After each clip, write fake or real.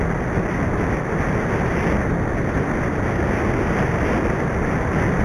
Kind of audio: real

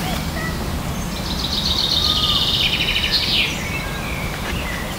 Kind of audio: real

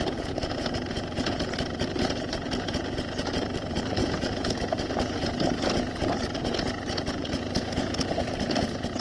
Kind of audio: fake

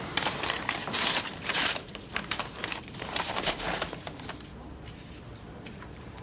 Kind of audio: fake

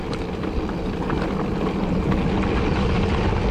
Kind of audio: real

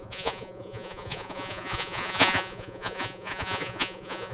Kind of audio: fake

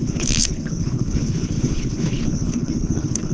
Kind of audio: fake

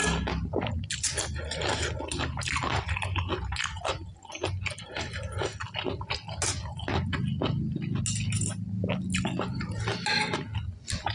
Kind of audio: real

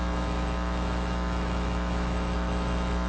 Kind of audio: fake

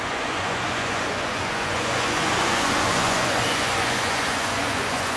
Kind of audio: fake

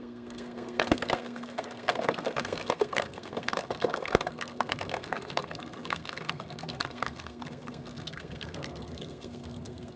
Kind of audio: fake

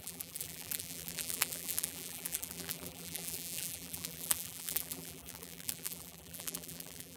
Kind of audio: fake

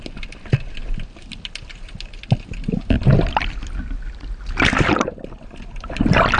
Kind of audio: real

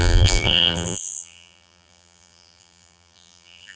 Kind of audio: fake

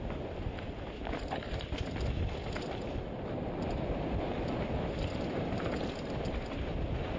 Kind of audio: real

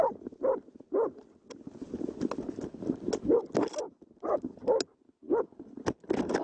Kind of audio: real